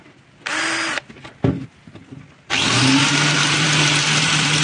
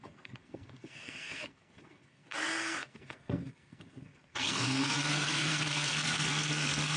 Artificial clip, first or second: second